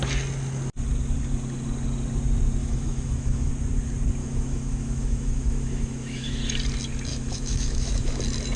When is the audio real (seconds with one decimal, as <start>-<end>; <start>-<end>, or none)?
0.0-2.6; 3.5-4.2; 6.4-7.1; 8.2-8.6